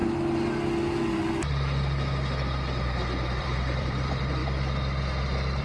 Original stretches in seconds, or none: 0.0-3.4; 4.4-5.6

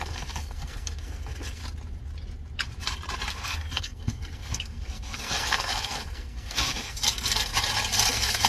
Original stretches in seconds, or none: 1.6-3.3; 7.5-8.1

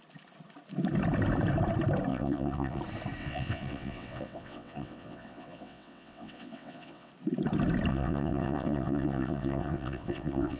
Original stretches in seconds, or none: 0.0-2.1; 2.8-3.2; 7.1-7.9